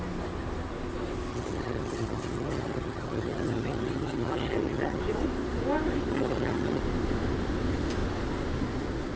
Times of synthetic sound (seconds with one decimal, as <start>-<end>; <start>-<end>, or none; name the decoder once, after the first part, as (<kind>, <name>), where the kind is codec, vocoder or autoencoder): 1.3-5.0 (vocoder, HiFi-GAN); 6.1-6.8